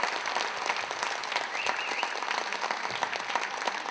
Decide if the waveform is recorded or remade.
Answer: recorded